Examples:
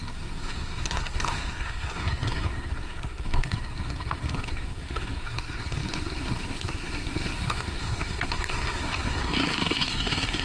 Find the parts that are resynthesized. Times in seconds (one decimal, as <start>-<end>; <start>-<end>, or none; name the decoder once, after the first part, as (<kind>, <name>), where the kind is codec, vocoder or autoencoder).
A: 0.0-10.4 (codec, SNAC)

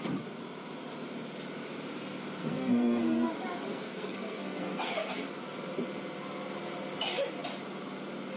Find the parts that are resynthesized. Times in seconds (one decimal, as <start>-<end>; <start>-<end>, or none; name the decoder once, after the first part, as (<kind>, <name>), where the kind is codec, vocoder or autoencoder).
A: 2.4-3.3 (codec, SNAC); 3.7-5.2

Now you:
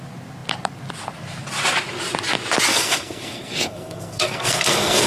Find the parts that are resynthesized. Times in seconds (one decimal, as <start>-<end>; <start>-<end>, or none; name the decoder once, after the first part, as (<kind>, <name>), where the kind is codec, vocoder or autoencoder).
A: 2.7-5.1 (codec, SNAC)

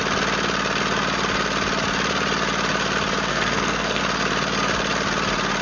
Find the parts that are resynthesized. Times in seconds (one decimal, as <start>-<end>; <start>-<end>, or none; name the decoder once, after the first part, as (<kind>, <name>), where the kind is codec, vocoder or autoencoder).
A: 3.3-4.0 (codec, SNAC)

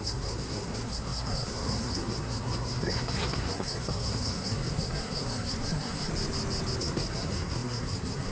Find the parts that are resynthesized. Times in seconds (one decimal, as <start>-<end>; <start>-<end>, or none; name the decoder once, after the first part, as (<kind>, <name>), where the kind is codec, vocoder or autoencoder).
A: 0.0-6.1 (codec, SNAC); 6.8-8.3

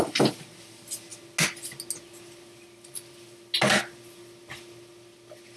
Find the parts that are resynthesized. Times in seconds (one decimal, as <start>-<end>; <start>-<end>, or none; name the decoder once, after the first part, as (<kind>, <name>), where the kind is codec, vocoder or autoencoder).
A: none

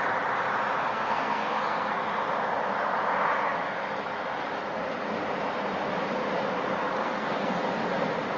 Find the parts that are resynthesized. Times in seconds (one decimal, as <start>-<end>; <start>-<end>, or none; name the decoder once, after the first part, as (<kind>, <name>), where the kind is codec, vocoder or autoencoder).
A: 0.9-2.0 (codec, SNAC); 7.0-7.6

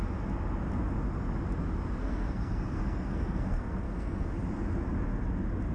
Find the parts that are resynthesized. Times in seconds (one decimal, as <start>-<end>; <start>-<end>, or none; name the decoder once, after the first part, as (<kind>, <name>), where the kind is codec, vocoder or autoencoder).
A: 2.0-4.3 (codec, SNAC)